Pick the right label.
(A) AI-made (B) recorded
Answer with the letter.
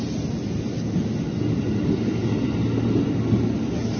B